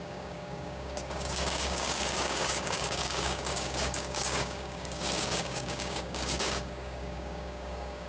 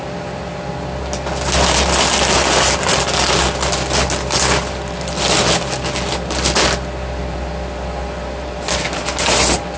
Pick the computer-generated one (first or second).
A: first